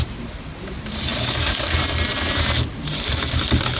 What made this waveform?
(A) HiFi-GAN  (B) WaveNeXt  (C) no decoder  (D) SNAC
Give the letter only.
C